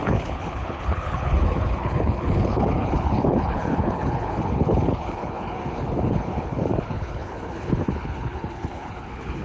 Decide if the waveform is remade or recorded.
remade